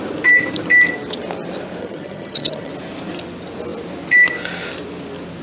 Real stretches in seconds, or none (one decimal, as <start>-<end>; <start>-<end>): 0.0-1.8; 2.7-5.4